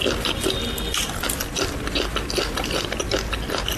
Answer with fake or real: real